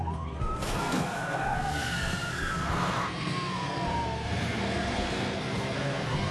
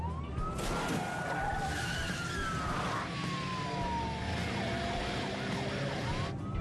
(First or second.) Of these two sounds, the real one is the second